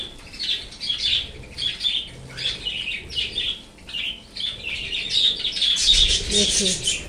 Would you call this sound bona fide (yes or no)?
yes